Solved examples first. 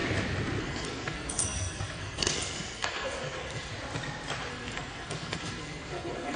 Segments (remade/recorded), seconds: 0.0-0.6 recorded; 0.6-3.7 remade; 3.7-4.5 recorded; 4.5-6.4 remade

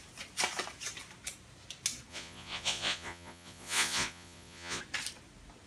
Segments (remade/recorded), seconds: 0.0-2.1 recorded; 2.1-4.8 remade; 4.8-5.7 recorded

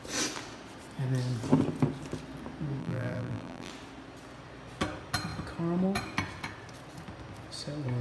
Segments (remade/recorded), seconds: 0.0-2.8 recorded; 2.8-3.7 remade; 3.7-8.0 recorded

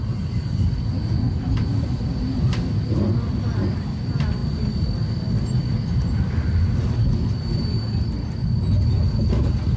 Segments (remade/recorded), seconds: 0.0-9.8 recorded